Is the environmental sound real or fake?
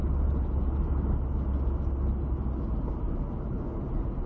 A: real